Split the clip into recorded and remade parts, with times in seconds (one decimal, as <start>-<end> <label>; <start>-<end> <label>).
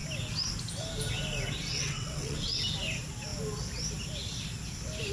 0.0-1.7 recorded; 1.7-2.6 remade; 2.6-5.1 recorded